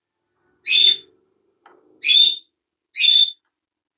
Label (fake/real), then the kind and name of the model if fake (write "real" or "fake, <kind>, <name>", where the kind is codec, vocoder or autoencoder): real